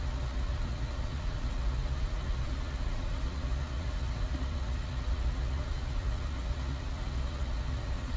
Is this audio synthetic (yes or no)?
yes